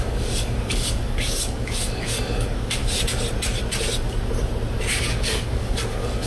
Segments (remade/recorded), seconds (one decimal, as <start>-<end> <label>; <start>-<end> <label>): 0.0-2.8 remade; 2.8-4.9 recorded; 4.9-6.3 remade

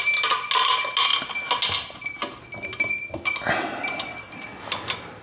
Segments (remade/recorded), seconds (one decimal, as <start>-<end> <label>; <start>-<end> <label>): 0.0-5.2 recorded

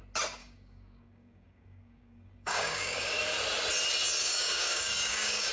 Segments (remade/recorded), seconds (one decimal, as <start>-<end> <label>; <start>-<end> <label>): 0.0-0.4 recorded; 0.4-3.1 remade; 3.1-4.2 recorded; 4.2-5.5 remade

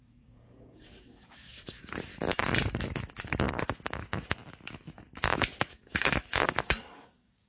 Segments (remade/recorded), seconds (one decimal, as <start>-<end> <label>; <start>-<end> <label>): 0.0-2.1 remade; 2.1-5.7 recorded; 5.7-7.5 remade

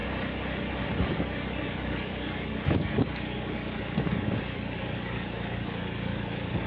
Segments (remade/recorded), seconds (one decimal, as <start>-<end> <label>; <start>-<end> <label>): 0.0-1.0 recorded; 1.0-6.7 remade

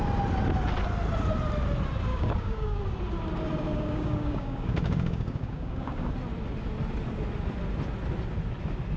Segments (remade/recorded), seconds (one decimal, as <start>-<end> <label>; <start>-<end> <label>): 0.0-2.1 recorded; 2.1-2.8 remade; 2.8-3.7 recorded; 3.7-6.1 remade; 6.1-9.0 recorded

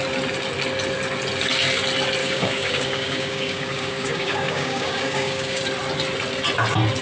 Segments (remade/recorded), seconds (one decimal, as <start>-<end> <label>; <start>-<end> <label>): 0.0-2.2 recorded; 2.2-5.6 remade; 5.6-7.0 recorded

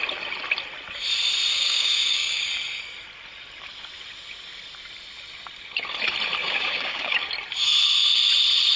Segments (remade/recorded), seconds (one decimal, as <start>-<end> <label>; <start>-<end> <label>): 0.0-1.5 recorded; 1.5-2.5 remade; 2.5-6.4 recorded; 6.4-7.3 remade; 7.3-8.8 recorded